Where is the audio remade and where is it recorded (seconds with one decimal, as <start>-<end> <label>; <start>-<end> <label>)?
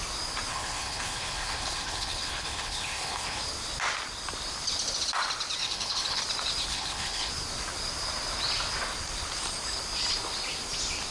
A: 0.0-0.5 recorded; 0.5-3.4 remade; 3.4-5.6 recorded; 5.6-6.2 remade; 6.2-6.7 recorded; 6.7-7.3 remade; 7.3-11.1 recorded